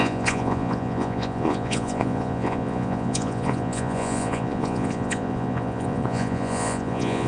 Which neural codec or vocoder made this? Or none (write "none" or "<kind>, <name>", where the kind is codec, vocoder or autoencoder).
vocoder, Vocos